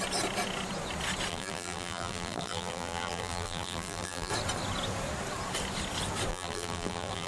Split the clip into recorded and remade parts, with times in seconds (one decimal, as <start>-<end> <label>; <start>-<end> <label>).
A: 0.0-1.3 recorded; 1.3-4.3 remade; 4.3-6.3 recorded; 6.3-7.3 remade